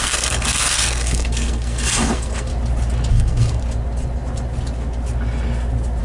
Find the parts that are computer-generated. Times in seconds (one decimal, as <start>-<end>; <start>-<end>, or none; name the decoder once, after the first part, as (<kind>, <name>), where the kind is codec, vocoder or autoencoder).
0.0-2.5 (codec, SNAC); 3.1-3.6